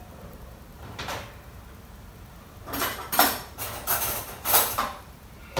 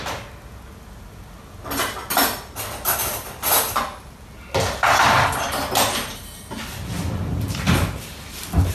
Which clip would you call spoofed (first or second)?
first